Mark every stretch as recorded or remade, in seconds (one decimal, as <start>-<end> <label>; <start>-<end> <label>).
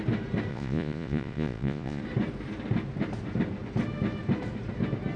0.0-0.5 recorded; 0.5-2.0 remade; 2.0-5.2 recorded